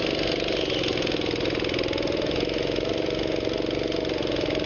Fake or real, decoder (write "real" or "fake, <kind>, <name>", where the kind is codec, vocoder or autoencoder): real